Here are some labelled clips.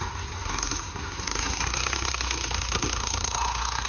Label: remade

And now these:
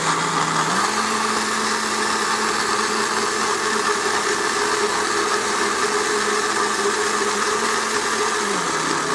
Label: recorded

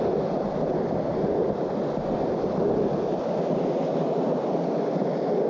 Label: recorded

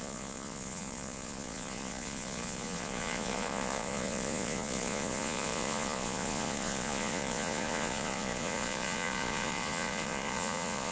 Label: remade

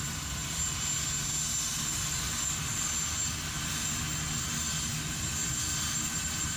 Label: recorded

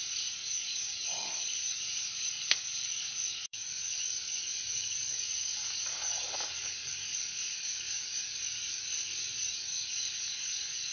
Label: remade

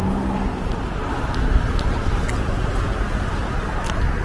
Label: recorded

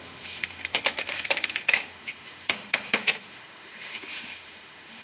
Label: remade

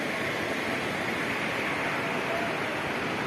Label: recorded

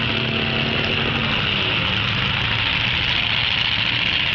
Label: recorded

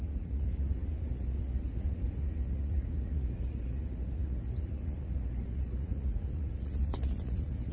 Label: remade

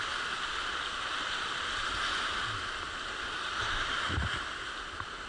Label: recorded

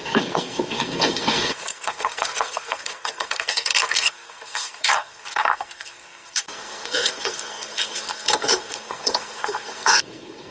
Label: remade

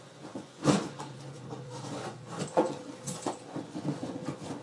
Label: remade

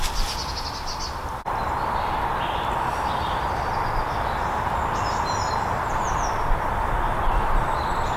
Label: recorded